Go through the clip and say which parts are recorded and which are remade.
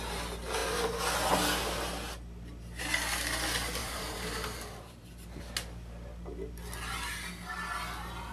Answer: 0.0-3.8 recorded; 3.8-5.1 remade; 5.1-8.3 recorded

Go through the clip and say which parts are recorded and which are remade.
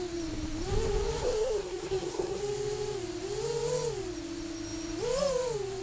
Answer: 0.0-1.2 recorded; 1.2-2.4 remade; 2.4-5.8 recorded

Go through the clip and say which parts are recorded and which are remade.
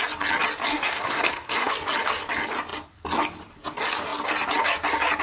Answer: 0.0-0.7 recorded; 0.7-1.7 remade; 1.7-5.2 recorded